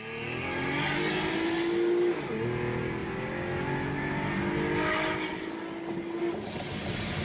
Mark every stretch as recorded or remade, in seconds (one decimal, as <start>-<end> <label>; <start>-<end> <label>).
0.0-7.2 recorded